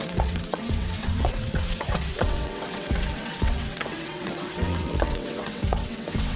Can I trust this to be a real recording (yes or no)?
no